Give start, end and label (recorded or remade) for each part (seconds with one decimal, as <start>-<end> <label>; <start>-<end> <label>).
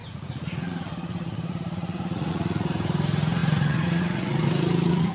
0.0-5.1 remade